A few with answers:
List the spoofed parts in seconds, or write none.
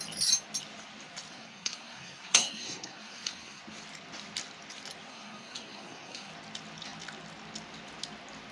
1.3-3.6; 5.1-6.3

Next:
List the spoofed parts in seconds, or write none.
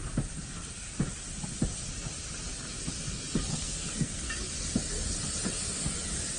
3.5-4.4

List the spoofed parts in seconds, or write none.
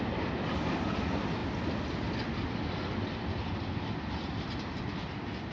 none